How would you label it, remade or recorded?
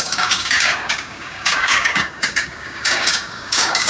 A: remade